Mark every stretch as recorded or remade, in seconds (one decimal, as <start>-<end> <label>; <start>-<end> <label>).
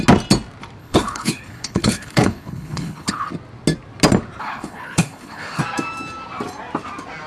0.0-0.8 recorded; 0.8-3.3 remade; 3.3-4.4 recorded; 4.4-5.6 remade; 5.6-7.3 recorded